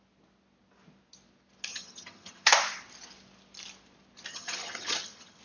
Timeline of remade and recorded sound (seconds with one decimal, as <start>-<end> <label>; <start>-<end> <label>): 0.0-1.7 recorded; 1.7-2.5 remade; 2.5-4.3 recorded; 4.3-5.4 remade